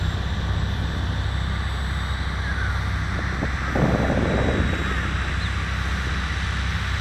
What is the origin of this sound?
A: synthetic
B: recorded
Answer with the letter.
B